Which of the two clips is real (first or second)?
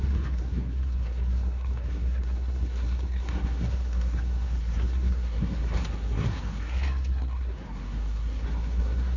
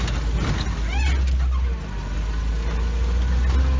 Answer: second